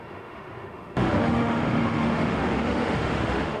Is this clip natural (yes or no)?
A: no